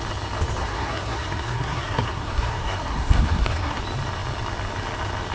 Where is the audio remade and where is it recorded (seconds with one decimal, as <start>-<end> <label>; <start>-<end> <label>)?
0.0-0.6 recorded; 0.6-3.8 remade; 3.8-5.3 recorded